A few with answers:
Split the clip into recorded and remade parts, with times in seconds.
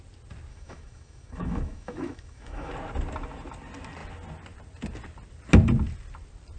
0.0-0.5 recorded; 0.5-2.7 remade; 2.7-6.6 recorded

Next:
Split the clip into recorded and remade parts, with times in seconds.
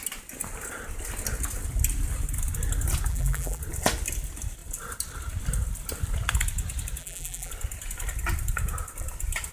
0.0-3.1 recorded; 3.1-3.6 remade; 3.6-7.0 recorded; 7.0-7.5 remade; 7.5-9.5 recorded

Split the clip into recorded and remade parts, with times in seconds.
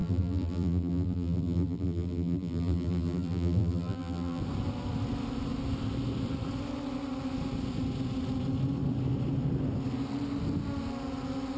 0.0-4.4 remade; 4.4-11.6 recorded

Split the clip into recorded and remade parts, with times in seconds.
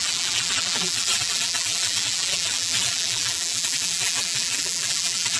0.0-5.4 remade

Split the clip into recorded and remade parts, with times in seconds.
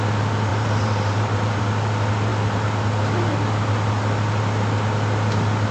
0.0-0.5 recorded; 0.5-1.6 remade; 1.6-5.7 recorded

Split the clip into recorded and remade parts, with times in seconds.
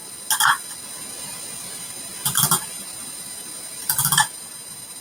0.0-5.0 recorded